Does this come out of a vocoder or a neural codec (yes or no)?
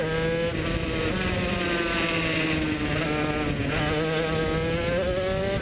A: no